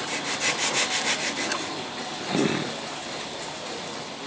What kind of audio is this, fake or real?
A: real